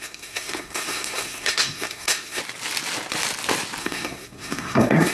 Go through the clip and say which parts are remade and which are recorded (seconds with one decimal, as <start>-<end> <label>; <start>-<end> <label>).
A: 0.0-2.4 remade; 2.4-3.8 recorded; 3.8-5.1 remade